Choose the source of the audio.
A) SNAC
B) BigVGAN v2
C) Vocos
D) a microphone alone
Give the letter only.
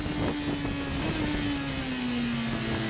D